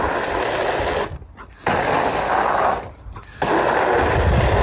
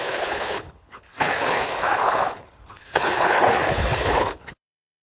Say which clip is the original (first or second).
first